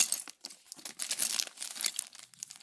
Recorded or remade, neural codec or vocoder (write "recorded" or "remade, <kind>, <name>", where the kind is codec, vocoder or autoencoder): recorded